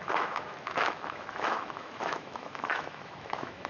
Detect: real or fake fake